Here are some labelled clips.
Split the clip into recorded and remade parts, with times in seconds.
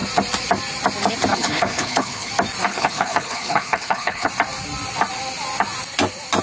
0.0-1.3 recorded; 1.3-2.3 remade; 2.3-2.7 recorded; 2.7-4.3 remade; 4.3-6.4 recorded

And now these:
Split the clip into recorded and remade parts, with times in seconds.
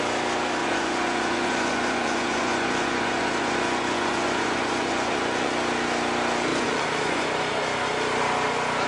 0.0-0.6 recorded; 0.6-5.5 remade; 5.5-6.5 recorded; 6.5-7.9 remade; 7.9-8.9 recorded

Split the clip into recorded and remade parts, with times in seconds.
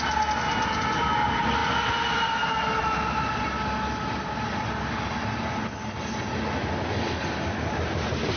0.0-8.4 recorded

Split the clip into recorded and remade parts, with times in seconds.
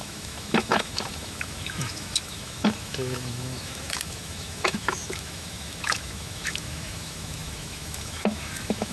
0.0-8.9 remade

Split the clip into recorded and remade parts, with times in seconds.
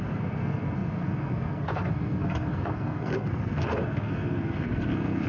0.0-5.3 remade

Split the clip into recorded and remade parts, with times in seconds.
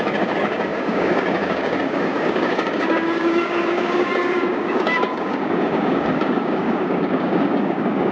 0.0-8.1 remade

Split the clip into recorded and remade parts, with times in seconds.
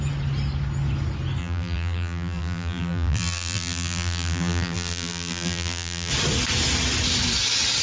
0.0-1.4 recorded; 1.4-6.1 remade; 6.1-7.8 recorded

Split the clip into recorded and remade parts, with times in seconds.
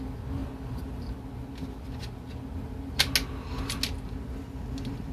0.0-5.1 recorded